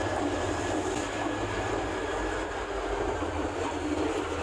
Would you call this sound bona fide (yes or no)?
no